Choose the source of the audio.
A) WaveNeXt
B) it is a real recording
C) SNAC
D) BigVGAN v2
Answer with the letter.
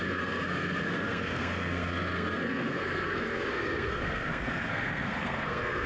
C